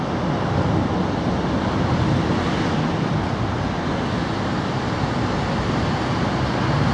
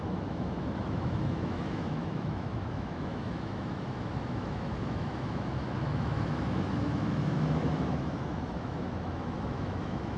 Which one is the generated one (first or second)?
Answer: second